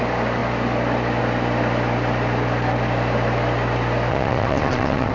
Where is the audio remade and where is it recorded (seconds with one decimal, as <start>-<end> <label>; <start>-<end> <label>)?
0.0-4.1 recorded; 4.1-5.1 remade